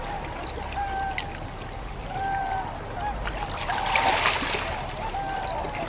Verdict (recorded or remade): recorded